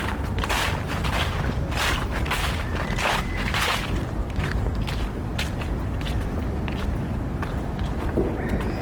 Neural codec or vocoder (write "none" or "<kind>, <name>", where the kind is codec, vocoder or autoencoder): none